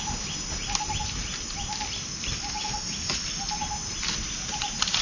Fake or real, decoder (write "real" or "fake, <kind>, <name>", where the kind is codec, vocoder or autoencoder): real